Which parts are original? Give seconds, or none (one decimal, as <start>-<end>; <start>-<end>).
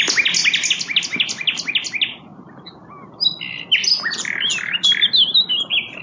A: 0.0-6.0